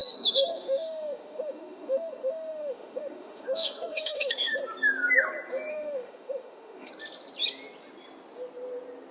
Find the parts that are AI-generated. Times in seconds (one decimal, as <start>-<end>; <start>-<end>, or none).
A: 0.0-4.6; 5.7-6.9